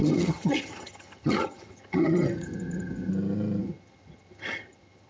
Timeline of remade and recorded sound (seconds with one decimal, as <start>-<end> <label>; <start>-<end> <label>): 0.0-3.1 remade; 3.1-3.6 recorded; 3.6-5.1 remade